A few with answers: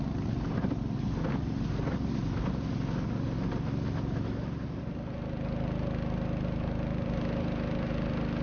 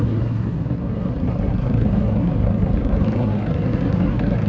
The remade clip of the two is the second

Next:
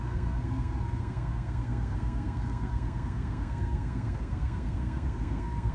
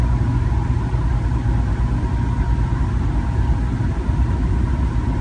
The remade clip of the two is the first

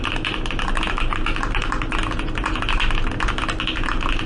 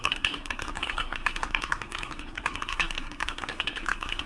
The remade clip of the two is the second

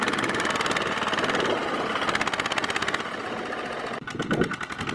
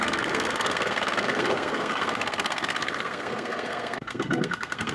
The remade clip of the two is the second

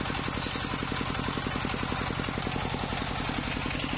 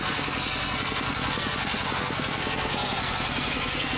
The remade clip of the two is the second